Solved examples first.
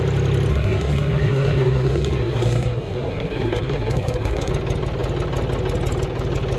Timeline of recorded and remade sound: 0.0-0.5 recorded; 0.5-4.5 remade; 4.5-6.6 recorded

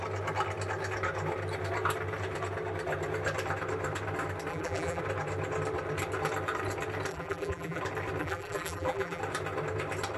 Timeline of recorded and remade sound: 0.0-4.5 recorded; 4.5-5.0 remade; 5.0-7.1 recorded; 7.1-7.8 remade; 7.8-8.2 recorded; 8.2-9.2 remade; 9.2-10.2 recorded

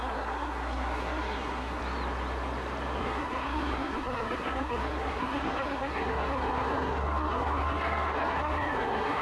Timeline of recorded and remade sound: 0.0-1.8 remade; 1.8-3.0 recorded; 3.0-9.2 remade

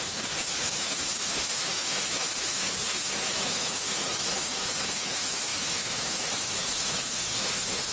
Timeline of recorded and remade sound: 0.0-7.9 remade

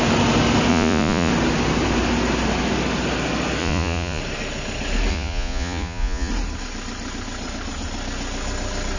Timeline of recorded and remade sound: 0.0-0.7 recorded; 0.7-1.3 remade; 1.3-3.6 recorded; 3.6-4.2 remade; 4.2-5.1 recorded; 5.1-6.3 remade; 6.3-9.0 recorded

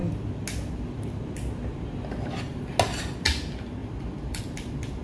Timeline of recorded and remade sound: 0.0-3.8 recorded; 3.8-4.4 remade; 4.4-5.0 recorded

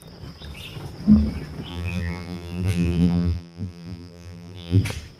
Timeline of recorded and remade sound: 0.0-1.7 recorded; 1.7-4.8 remade; 4.8-5.2 recorded